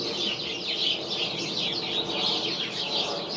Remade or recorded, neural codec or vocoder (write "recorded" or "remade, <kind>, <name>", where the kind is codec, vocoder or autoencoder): recorded